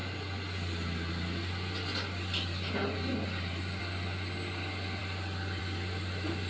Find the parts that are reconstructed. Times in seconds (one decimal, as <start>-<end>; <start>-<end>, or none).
none

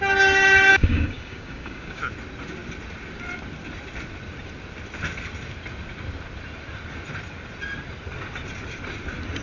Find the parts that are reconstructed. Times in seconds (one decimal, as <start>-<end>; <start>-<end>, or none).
0.7-2.0

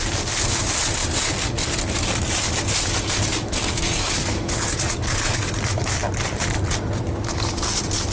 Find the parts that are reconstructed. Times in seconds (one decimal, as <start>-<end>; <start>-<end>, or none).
3.3-5.5